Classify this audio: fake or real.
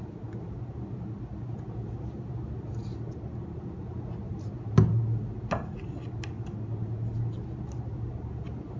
real